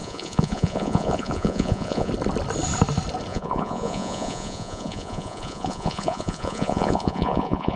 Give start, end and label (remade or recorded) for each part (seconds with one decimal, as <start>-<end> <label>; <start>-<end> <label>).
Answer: 0.0-2.1 remade; 2.1-3.3 recorded; 3.3-7.8 remade

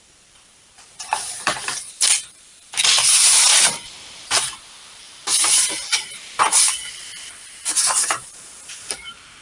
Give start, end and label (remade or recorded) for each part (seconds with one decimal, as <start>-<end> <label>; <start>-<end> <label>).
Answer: 0.0-6.8 remade; 6.8-7.9 recorded; 7.9-9.4 remade

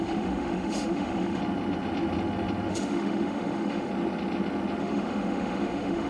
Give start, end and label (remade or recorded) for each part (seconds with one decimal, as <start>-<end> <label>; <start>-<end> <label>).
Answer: 0.0-1.4 remade; 1.4-2.7 recorded; 2.7-3.9 remade; 3.9-4.8 recorded; 4.8-6.1 remade

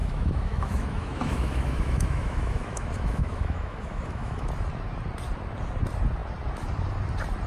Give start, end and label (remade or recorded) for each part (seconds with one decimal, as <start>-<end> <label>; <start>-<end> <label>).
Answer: 0.0-4.5 remade; 4.5-7.5 recorded

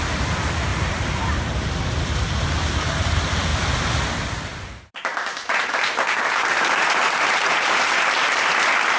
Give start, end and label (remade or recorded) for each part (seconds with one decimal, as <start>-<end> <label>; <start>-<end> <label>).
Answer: 0.0-0.7 recorded; 0.7-2.4 remade; 2.4-4.5 recorded; 4.5-7.9 remade; 7.9-9.0 recorded